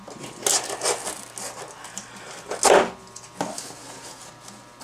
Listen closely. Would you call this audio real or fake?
real